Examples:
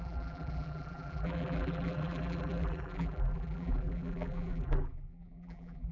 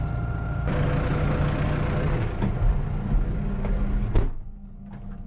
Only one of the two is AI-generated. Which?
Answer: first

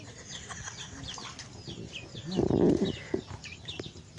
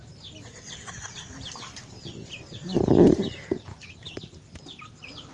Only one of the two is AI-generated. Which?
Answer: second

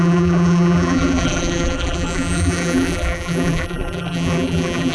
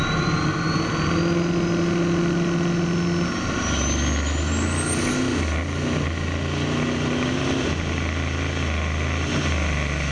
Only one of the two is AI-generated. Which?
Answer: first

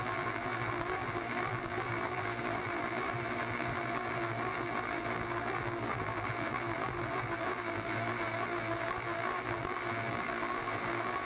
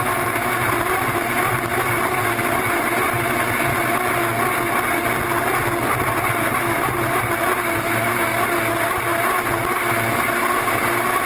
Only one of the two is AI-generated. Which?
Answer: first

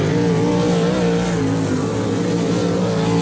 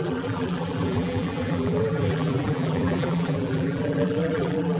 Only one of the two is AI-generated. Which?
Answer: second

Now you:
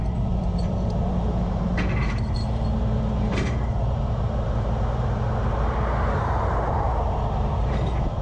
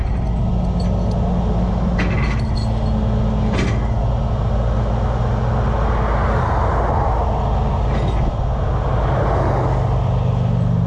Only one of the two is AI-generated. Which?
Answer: first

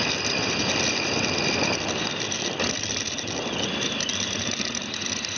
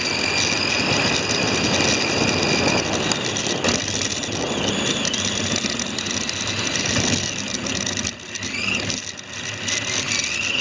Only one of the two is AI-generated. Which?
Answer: first